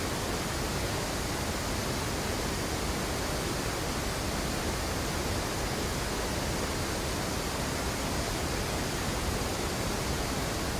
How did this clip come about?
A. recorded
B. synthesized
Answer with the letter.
A